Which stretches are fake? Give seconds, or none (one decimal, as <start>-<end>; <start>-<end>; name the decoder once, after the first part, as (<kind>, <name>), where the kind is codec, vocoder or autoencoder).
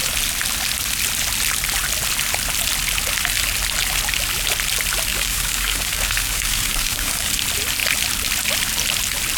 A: 5.1-7.3 (codec, DAC)